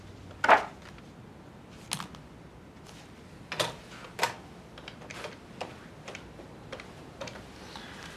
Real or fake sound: real